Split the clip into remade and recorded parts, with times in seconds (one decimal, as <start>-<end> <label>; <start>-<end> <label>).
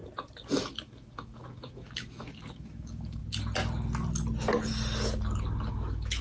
0.0-0.7 recorded; 0.7-3.2 remade; 3.2-5.7 recorded; 5.7-6.2 remade